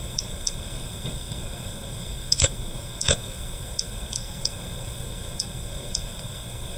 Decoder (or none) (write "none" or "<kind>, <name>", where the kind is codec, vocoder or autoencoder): codec, SNAC